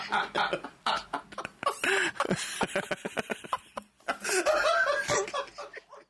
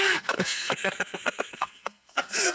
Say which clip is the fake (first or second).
second